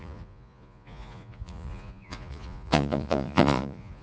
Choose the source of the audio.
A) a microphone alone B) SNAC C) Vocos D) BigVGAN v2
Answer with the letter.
C